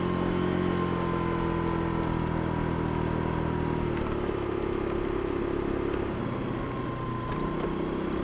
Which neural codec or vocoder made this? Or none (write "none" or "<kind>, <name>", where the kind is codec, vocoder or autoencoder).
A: none